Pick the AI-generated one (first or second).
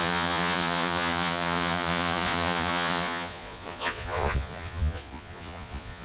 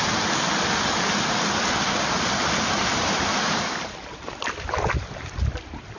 first